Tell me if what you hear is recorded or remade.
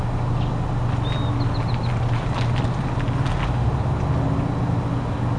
recorded